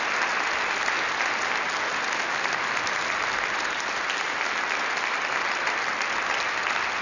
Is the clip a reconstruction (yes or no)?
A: no